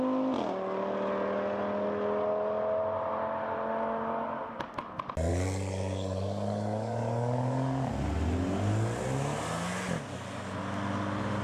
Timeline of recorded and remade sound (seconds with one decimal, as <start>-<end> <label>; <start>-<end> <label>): 0.0-5.3 recorded; 5.3-7.9 remade; 7.9-11.4 recorded